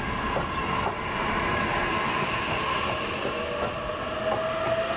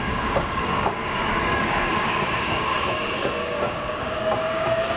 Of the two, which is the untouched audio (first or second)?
first